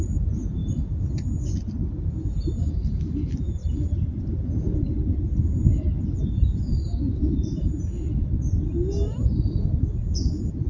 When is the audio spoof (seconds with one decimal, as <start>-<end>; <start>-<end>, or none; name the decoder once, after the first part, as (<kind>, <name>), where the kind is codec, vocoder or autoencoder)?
0.6-1.1 (vocoder, BigVGAN v2); 3.6-7.8